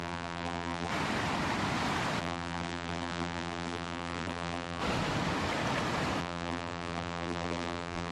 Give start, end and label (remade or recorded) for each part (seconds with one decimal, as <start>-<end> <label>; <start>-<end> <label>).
0.0-0.9 remade; 0.9-2.2 recorded; 2.2-4.8 remade; 4.8-6.2 recorded; 6.2-8.1 remade